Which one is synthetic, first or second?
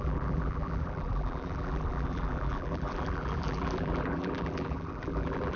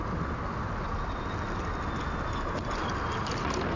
first